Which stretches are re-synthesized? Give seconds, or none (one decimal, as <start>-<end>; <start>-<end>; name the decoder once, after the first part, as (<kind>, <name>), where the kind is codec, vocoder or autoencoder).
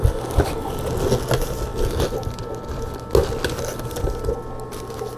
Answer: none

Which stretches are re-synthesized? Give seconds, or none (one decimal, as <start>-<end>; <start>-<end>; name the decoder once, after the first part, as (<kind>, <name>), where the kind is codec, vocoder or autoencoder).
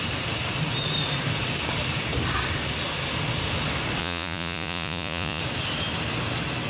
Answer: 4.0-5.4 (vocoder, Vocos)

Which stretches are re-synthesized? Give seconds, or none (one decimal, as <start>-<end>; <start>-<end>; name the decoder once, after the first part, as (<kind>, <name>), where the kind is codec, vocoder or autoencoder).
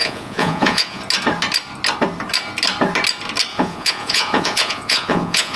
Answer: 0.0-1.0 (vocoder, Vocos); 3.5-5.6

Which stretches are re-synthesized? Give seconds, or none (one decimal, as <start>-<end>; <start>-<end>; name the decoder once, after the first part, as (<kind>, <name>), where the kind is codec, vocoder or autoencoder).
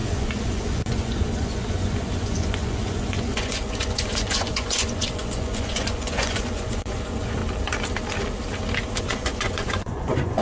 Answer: 0.0-7.4 (vocoder, Vocos); 9.0-10.4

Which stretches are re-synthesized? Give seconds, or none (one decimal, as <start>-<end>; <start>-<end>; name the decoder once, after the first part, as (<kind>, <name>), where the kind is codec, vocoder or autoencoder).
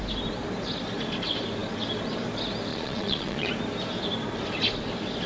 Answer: 2.7-3.5 (vocoder, Vocos)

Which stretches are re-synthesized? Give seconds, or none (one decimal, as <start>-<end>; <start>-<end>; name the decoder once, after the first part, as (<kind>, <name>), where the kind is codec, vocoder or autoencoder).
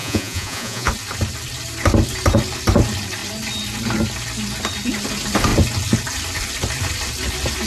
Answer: 0.0-0.9 (vocoder, Vocos)